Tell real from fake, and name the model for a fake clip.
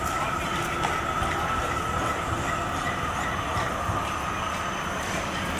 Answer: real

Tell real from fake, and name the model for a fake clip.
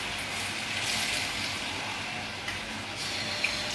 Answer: real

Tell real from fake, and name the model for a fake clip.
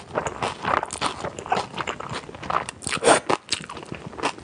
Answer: real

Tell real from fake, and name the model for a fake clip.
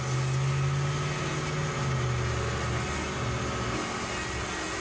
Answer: real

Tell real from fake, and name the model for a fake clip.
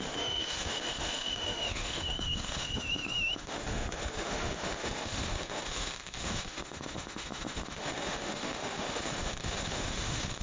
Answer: fake, autoencoder, DAC-VAE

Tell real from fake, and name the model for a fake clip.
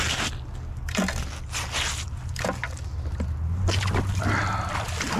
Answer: real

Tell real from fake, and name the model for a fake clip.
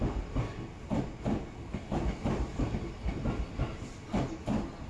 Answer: real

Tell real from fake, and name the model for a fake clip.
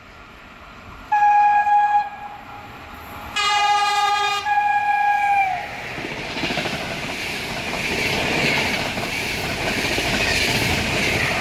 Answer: real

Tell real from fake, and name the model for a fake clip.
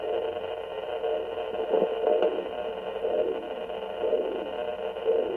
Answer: real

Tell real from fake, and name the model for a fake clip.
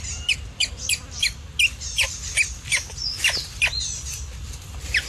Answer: real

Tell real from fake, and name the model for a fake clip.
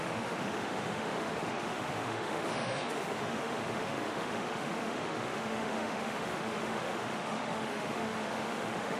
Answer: fake, autoencoder, DAC-VAE